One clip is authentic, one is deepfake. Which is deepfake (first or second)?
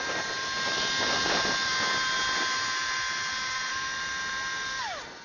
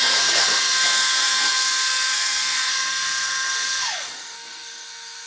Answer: second